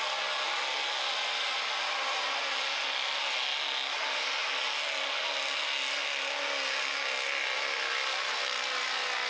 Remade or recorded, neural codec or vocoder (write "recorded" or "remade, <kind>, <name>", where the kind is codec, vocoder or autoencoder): recorded